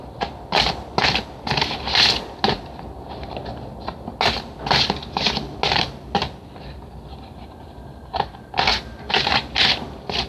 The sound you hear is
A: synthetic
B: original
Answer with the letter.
B